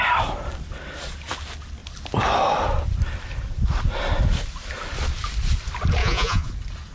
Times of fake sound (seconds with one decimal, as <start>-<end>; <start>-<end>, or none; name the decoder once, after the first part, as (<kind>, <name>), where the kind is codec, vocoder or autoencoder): 6.0-6.5 (vocoder, Vocos)